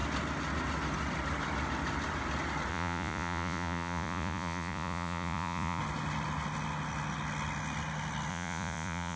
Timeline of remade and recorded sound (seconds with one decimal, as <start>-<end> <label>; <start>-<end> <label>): 0.0-2.7 recorded; 2.7-5.8 remade; 5.8-8.3 recorded; 8.3-9.2 remade